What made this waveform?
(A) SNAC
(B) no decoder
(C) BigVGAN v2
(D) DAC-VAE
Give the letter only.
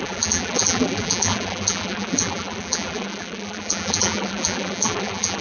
C